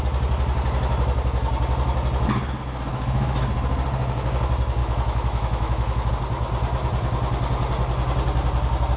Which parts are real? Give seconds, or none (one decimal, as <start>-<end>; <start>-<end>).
0.0-2.9; 3.5-4.8; 6.1-9.0